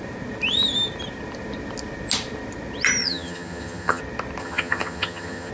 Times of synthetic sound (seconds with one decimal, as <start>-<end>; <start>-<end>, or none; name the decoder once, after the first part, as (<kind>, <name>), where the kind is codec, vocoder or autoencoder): 3.0-4.0 (vocoder, HiFi-GAN); 4.4-5.5